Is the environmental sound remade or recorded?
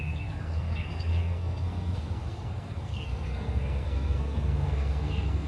remade